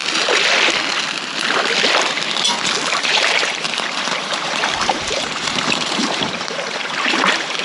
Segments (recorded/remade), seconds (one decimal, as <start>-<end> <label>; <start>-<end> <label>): 0.0-3.0 recorded; 3.0-7.6 remade